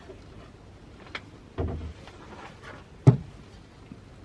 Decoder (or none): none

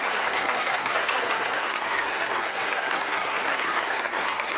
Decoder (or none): codec, SNAC